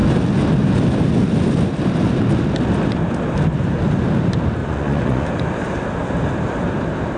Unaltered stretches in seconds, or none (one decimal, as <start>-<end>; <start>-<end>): 0.0-4.6; 5.3-7.2